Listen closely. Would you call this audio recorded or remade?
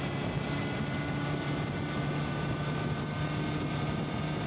recorded